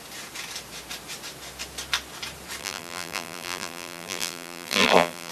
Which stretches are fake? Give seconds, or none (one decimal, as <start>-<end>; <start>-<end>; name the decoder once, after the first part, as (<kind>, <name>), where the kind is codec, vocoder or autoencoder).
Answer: 2.6-5.3 (vocoder, BigVGAN v2)